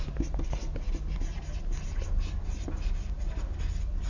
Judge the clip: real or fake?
real